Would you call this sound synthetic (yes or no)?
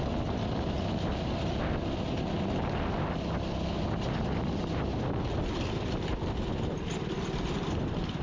no